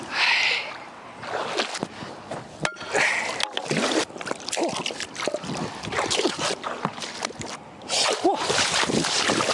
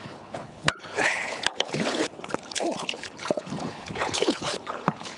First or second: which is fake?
second